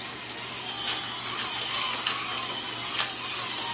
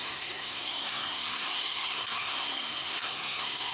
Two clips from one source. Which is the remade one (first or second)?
second